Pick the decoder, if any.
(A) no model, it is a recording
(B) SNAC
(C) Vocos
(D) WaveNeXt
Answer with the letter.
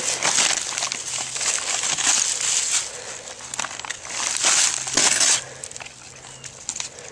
A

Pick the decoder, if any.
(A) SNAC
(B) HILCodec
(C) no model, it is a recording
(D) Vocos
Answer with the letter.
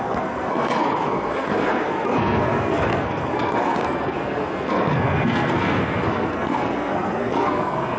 A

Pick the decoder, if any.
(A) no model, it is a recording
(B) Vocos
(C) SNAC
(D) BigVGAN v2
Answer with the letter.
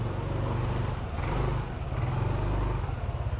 A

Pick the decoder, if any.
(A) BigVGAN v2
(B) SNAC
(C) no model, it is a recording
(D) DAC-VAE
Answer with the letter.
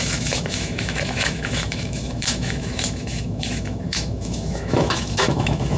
D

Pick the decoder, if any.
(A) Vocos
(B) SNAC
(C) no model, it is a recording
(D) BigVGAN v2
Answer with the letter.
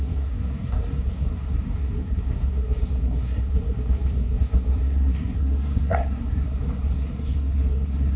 B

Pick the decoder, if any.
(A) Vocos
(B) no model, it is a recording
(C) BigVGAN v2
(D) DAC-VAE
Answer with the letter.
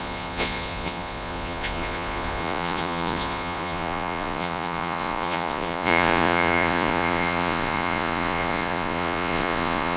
A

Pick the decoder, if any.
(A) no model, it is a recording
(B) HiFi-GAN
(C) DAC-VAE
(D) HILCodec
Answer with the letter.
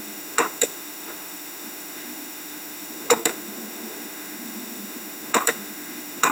C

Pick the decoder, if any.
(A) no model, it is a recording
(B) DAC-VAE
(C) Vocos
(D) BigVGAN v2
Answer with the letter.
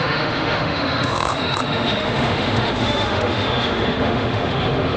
B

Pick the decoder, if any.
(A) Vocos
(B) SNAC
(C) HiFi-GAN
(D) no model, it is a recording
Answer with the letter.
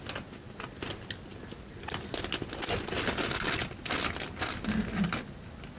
D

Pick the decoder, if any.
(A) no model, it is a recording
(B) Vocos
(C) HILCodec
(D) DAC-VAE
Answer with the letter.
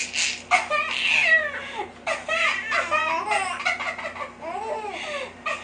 A